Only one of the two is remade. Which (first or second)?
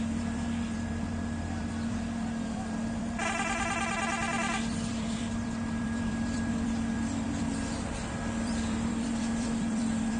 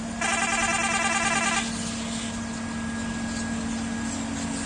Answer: first